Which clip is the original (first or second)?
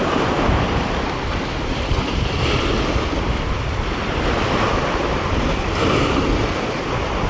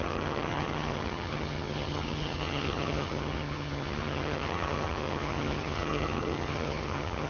first